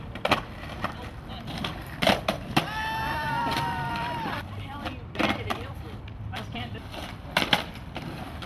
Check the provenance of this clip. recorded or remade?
remade